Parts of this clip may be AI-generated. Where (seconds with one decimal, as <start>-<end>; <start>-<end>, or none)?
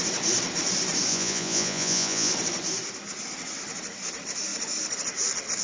1.1-2.3